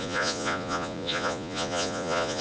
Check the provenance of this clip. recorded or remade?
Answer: remade